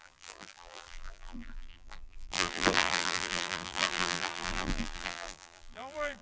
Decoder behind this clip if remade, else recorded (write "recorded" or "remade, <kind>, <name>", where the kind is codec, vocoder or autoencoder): remade, vocoder, BigVGAN v2